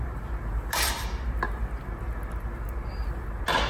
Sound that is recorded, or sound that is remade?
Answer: recorded